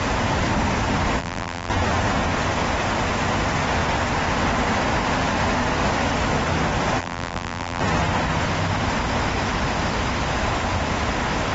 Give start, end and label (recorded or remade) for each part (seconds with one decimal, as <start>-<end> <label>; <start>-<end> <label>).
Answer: 0.0-1.2 recorded; 1.2-1.7 remade; 1.7-7.0 recorded; 7.0-7.8 remade; 7.8-11.5 recorded